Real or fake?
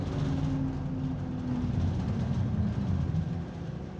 real